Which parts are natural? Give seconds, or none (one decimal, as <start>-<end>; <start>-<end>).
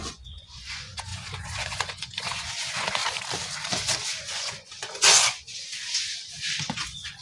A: 3.0-4.2